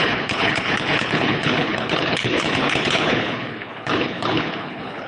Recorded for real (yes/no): no